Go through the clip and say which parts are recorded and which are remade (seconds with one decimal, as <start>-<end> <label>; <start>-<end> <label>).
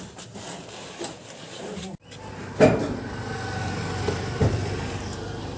0.0-5.6 recorded